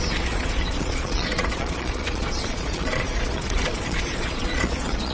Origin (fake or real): fake